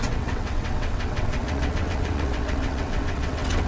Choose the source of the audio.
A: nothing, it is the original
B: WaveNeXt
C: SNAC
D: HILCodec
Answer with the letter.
B